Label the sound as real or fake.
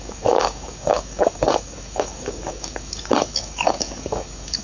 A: fake